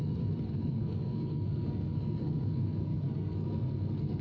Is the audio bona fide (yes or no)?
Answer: no